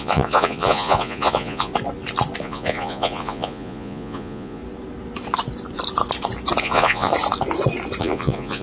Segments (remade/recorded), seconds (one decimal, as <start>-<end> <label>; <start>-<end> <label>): 0.0-1.7 remade; 1.7-2.4 recorded; 2.4-4.6 remade; 4.6-6.6 recorded; 6.6-7.1 remade; 7.1-8.0 recorded; 8.0-8.6 remade